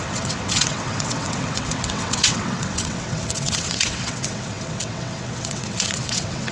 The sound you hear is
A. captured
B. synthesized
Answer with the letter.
B